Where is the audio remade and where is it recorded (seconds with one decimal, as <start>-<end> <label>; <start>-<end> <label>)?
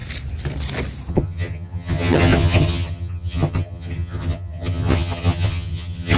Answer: 0.0-1.1 recorded; 1.1-6.2 remade